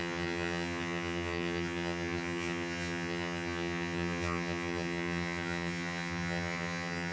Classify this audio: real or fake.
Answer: fake